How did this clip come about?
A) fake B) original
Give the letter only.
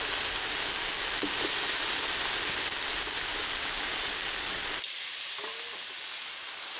B